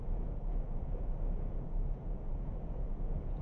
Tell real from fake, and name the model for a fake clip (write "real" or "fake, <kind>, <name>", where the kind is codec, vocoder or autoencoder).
fake, vocoder, Vocos